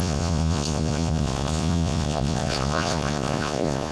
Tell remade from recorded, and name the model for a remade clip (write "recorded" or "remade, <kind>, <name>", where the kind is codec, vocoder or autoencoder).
remade, vocoder, Vocos